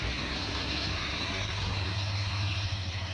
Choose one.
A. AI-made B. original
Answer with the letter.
A